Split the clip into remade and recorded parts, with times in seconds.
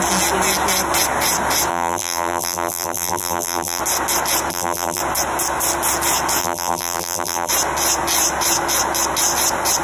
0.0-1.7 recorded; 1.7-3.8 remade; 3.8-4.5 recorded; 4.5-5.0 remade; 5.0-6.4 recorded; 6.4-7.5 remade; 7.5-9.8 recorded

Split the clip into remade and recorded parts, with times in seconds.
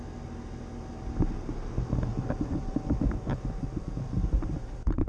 0.0-2.1 recorded; 2.1-4.4 remade; 4.4-5.1 recorded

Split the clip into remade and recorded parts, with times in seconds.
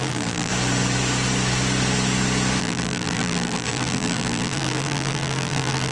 0.0-0.5 remade; 0.5-2.6 recorded; 2.6-5.9 remade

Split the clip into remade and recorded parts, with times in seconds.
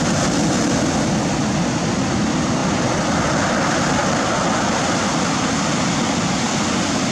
0.0-2.6 recorded; 2.6-3.5 remade; 3.5-4.0 recorded; 4.0-6.5 remade; 6.5-7.1 recorded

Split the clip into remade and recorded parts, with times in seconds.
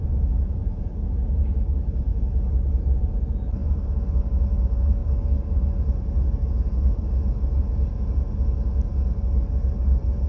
0.0-2.1 remade; 2.1-2.9 recorded; 2.9-5.0 remade; 5.0-9.8 recorded; 9.8-10.3 remade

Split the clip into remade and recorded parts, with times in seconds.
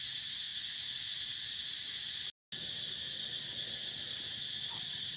0.0-3.8 recorded; 3.8-5.2 remade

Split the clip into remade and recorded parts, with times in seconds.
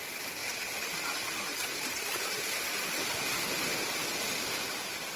0.0-0.4 recorded; 0.4-2.8 remade; 2.8-5.2 recorded